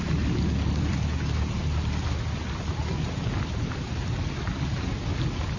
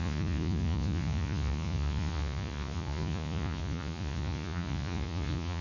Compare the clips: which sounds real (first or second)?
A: first